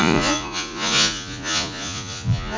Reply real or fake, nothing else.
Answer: fake